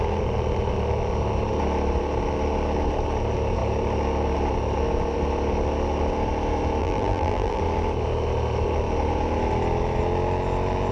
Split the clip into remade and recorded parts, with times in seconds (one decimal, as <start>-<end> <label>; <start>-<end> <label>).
0.0-6.8 recorded; 6.8-7.6 remade; 7.6-10.9 recorded